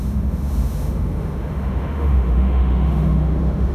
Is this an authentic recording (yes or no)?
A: no